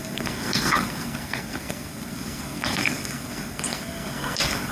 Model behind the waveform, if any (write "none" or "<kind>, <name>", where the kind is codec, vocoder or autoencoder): codec, SNAC